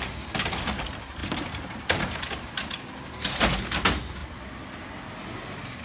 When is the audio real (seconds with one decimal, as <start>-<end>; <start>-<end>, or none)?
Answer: 0.0-1.2; 2.1-5.8